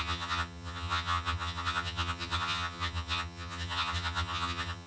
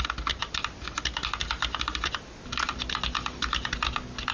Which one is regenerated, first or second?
first